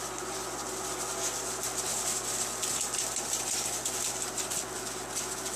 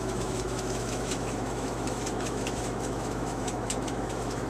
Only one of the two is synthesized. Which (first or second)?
second